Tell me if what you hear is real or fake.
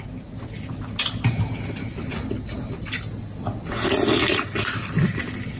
real